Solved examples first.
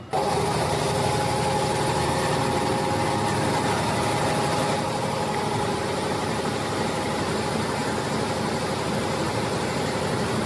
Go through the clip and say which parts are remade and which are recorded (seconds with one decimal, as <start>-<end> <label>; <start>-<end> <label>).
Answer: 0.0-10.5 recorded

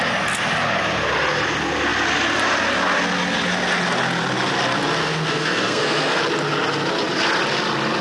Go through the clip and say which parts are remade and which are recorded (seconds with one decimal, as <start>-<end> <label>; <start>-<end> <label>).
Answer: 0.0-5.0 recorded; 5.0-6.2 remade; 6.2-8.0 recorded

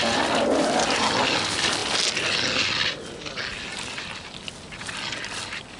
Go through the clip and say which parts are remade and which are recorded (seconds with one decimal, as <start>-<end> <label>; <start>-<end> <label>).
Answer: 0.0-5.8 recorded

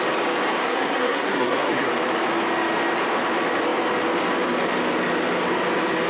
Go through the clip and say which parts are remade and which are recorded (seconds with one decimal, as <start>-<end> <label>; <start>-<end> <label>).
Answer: 0.0-0.6 recorded; 0.6-1.9 remade; 1.9-6.1 recorded

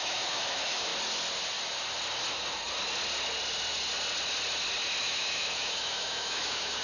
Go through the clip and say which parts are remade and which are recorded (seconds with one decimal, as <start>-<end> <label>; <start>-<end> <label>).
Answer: 0.0-0.9 remade; 0.9-5.0 recorded; 5.0-6.8 remade